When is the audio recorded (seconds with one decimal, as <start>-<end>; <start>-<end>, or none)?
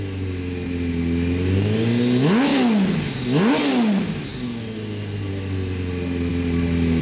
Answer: 0.0-7.0